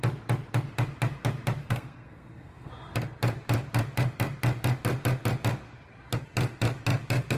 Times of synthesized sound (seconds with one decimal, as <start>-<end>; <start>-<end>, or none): 1.6-2.7

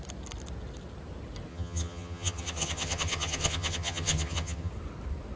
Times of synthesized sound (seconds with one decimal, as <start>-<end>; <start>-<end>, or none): 1.5-4.7

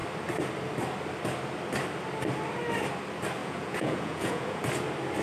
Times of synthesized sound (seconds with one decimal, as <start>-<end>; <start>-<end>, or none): 3.4-4.6

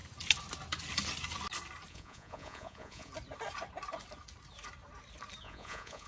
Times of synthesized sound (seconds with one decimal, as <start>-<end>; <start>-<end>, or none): 1.9-3.1; 5.4-6.1

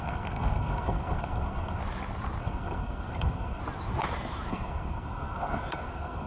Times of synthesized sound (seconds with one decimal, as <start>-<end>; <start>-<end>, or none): 0.0-1.8; 2.4-3.6; 4.5-6.3

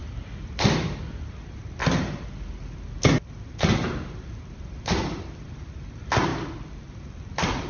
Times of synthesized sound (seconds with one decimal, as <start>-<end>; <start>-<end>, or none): 0.0-1.8; 3.1-6.3; 6.9-7.7

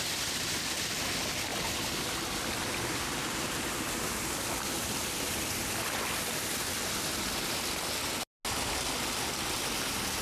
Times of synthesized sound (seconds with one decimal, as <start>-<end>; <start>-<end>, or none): none

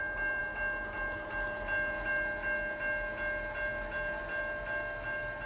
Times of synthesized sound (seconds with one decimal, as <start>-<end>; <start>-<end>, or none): none